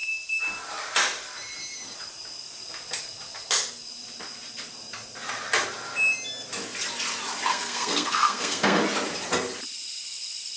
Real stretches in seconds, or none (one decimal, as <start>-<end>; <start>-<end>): 0.0-7.5; 8.8-10.6